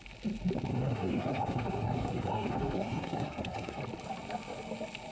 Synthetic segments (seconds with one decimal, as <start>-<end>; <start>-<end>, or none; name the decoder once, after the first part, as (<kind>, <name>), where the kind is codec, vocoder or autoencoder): 0.7-3.8 (codec, SNAC)